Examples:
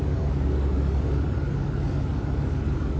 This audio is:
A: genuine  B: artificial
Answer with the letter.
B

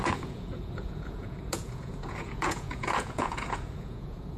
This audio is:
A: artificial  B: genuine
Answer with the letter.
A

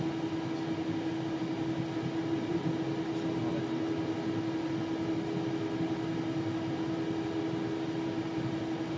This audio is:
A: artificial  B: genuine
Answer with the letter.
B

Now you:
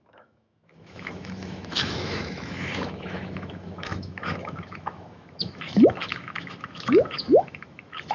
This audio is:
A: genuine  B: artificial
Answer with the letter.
B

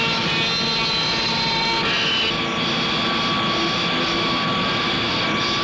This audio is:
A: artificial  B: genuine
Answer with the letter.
B